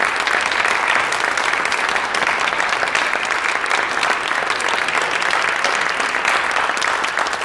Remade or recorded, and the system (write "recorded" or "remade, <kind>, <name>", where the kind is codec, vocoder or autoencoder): recorded